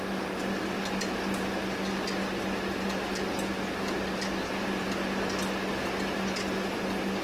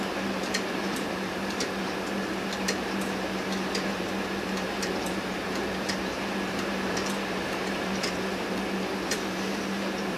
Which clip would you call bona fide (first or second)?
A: first